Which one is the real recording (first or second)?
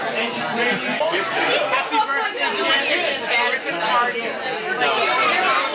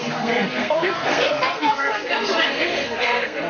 first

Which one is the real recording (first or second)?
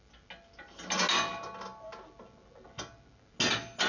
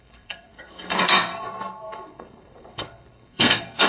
first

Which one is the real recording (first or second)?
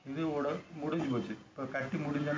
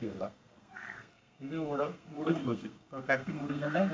first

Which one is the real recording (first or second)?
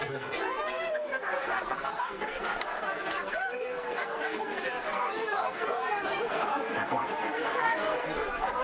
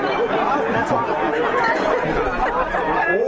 second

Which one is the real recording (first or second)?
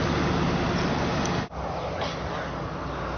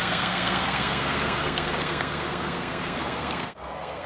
first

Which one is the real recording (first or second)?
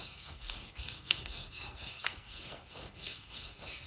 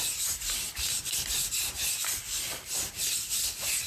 second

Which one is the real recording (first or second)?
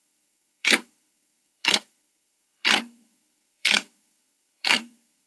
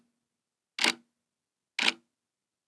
second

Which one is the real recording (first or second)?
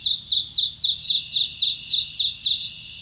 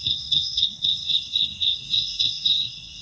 first